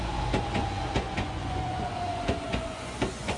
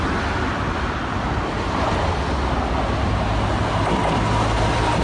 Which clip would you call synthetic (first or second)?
first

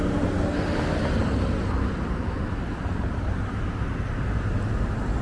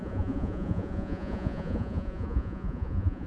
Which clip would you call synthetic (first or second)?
second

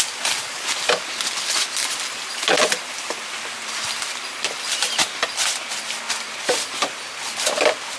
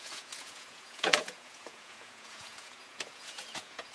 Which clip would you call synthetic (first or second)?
second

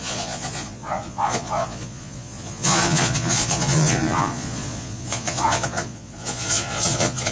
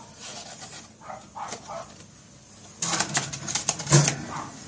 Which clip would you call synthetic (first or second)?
first